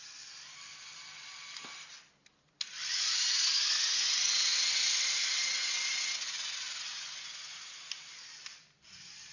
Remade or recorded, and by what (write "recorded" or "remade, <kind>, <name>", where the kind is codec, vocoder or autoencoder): recorded